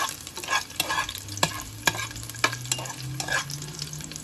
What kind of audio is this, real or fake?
real